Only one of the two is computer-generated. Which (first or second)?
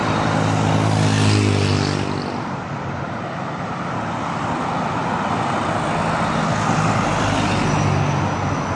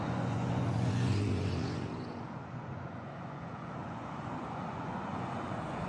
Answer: second